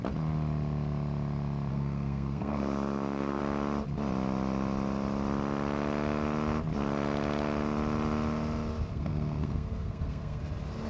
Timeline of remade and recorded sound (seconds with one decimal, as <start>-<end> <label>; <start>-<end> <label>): 0.0-1.7 recorded; 1.7-3.4 remade; 3.4-8.9 recorded; 8.9-10.4 remade; 10.4-10.9 recorded